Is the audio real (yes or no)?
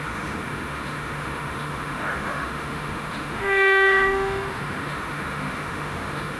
no